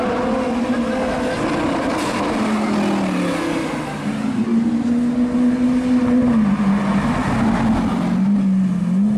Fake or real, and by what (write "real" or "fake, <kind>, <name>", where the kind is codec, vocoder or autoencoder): real